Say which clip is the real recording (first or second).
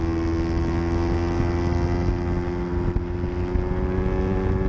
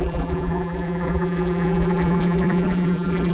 first